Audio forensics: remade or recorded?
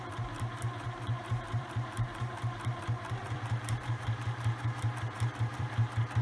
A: remade